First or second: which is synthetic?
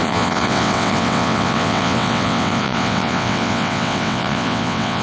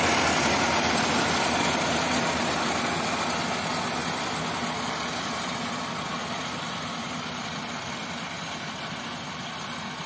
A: first